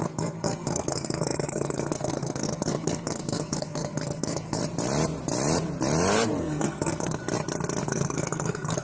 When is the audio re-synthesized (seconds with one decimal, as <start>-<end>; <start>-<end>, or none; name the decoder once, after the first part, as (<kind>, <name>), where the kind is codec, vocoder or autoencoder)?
0.0-4.6 (codec, SNAC); 6.4-7.2; 7.8-8.8